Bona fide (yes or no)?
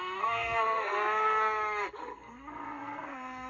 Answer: no